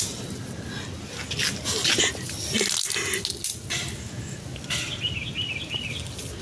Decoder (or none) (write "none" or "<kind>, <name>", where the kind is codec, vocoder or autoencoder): none